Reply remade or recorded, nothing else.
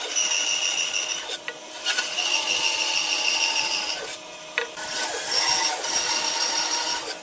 recorded